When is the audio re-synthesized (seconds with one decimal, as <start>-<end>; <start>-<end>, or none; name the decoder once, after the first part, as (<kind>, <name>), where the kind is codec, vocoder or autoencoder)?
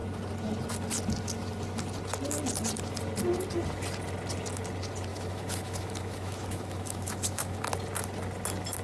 5.1-7.6 (autoencoder, DAC-VAE)